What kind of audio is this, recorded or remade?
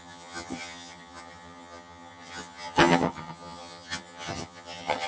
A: remade